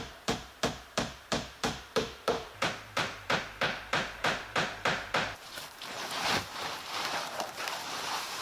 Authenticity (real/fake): fake